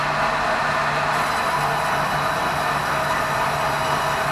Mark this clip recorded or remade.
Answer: recorded